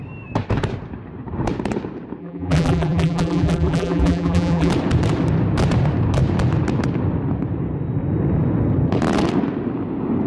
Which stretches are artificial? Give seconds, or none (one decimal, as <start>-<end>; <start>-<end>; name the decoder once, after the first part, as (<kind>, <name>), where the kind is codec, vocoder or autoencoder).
2.2-4.7 (vocoder, BigVGAN v2)